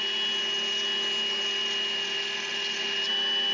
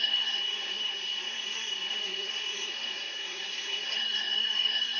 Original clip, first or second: first